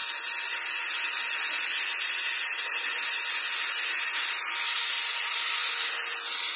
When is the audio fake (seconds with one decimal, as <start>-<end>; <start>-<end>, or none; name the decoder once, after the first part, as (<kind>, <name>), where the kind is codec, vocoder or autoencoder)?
none